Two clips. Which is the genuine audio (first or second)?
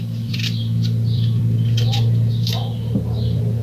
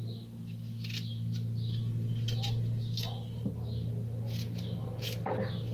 second